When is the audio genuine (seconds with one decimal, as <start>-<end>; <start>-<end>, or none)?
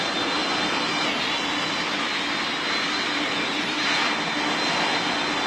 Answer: 0.0-5.5